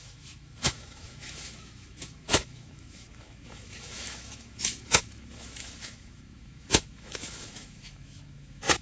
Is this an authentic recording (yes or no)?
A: no